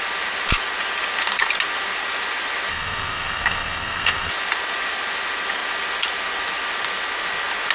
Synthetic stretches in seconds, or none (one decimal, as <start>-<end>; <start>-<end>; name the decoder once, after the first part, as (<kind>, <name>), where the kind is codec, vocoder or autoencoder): 2.7-4.3 (codec, SNAC)